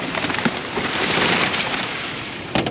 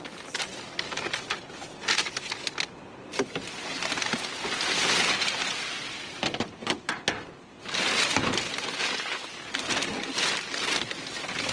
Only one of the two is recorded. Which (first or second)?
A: second